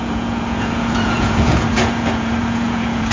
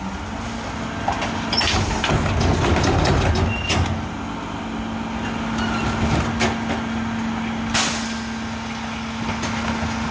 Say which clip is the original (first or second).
second